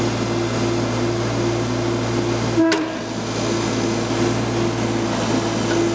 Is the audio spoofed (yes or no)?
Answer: no